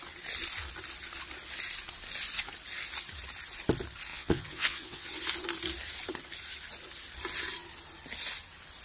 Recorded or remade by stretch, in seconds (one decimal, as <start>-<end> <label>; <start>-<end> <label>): 0.0-4.1 recorded; 4.1-5.2 remade; 5.2-8.8 recorded